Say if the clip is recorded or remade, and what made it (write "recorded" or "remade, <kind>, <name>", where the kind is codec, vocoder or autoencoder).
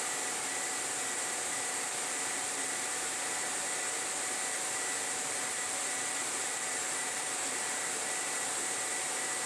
remade, vocoder, BigVGAN v2